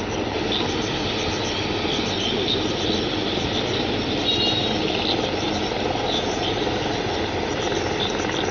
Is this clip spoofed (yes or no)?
no